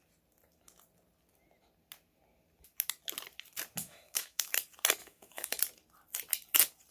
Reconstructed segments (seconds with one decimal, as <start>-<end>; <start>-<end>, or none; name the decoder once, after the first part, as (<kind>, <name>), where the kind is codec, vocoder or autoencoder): 3.8-4.5 (autoencoder, DAC-VAE); 5.0-5.6